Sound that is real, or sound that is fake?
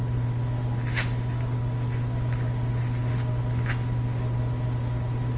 real